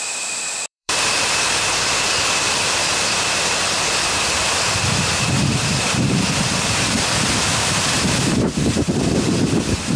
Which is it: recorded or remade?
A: remade